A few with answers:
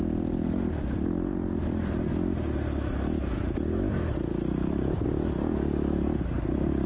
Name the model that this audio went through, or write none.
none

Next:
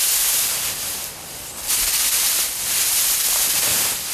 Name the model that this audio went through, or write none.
none